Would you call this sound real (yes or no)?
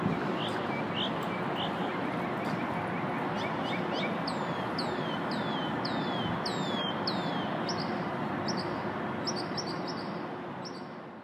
yes